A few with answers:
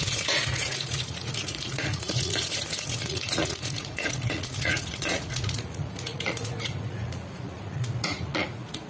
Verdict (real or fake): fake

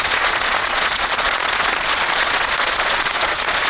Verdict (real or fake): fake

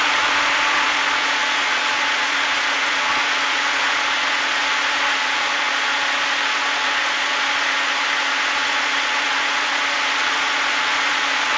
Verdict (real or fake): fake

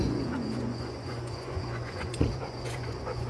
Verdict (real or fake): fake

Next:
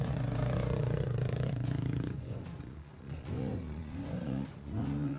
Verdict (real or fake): fake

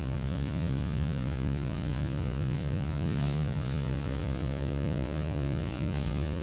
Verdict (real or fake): fake